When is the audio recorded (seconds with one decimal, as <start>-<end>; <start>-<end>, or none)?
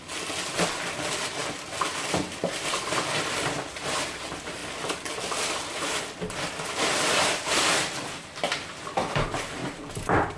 0.0-1.4; 3.6-4.6; 6.0-7.8; 8.7-9.6